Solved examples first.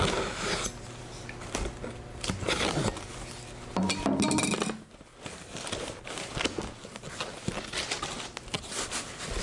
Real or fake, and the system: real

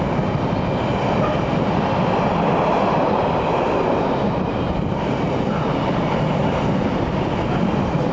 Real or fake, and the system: real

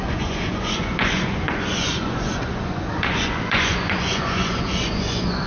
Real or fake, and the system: fake, vocoder, Vocos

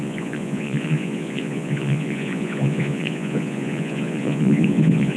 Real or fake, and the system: fake, vocoder, Vocos